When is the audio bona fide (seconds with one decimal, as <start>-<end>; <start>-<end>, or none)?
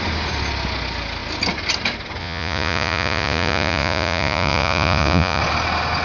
0.0-2.2; 5.4-6.0